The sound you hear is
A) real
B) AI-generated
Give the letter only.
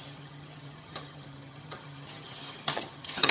B